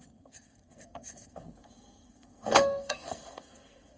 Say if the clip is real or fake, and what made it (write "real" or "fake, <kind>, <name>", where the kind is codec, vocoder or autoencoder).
fake, codec, SNAC